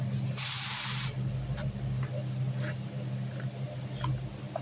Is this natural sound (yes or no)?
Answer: no